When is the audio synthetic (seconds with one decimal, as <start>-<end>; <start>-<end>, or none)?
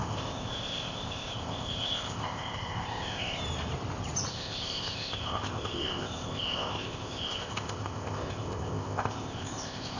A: 0.0-3.4; 4.3-10.0